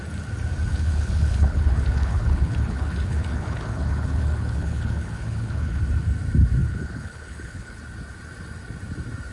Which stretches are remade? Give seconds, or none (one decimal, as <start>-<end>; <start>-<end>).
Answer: 0.7-5.8; 6.6-7.8